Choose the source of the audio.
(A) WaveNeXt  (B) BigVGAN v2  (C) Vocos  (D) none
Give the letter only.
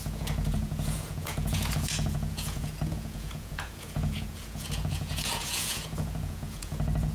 C